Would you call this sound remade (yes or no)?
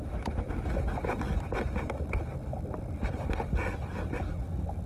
no